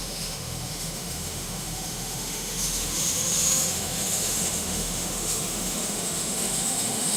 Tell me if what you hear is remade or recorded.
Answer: remade